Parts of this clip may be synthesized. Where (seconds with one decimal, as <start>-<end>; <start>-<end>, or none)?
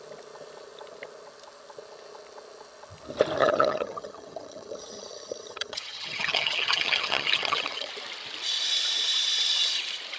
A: 3.4-7.9